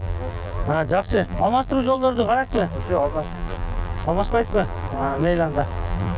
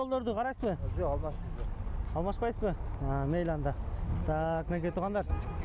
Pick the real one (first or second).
second